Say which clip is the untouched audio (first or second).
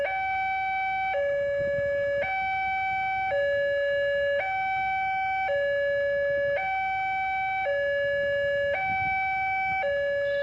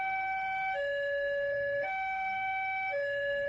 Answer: first